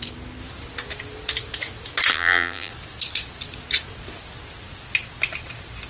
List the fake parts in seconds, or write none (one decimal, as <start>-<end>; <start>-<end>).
2.1-2.7